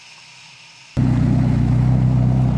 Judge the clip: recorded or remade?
recorded